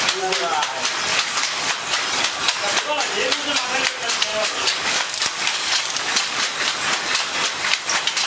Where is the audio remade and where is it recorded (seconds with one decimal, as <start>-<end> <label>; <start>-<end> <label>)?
0.0-1.1 recorded; 1.1-1.7 remade; 1.7-4.3 recorded; 4.3-6.4 remade; 6.4-8.3 recorded